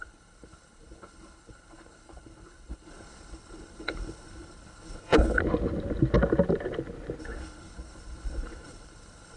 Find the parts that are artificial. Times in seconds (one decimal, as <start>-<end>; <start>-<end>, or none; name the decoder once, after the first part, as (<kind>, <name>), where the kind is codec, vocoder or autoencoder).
0.0-5.4 (codec, HILCodec); 7.2-9.4